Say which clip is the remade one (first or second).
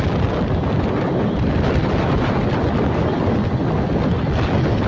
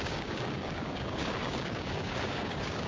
second